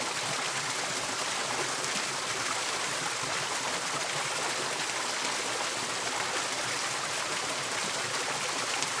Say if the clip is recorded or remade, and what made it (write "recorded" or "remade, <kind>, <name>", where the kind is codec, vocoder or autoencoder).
recorded